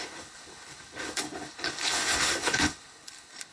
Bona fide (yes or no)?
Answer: no